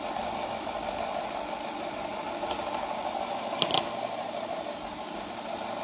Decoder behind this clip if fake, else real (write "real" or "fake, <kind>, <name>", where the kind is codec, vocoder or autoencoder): real